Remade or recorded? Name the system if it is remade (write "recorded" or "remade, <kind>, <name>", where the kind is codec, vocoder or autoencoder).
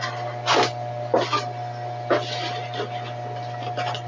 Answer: recorded